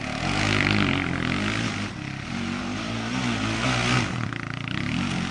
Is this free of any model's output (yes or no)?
yes